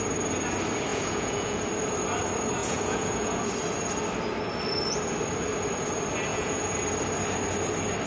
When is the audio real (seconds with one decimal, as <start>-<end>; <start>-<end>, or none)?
0.0-0.9; 1.6-2.6; 3.4-6.3; 6.8-8.1